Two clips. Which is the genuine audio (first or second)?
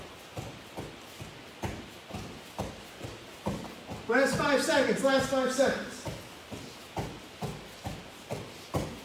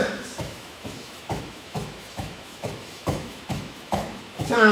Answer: first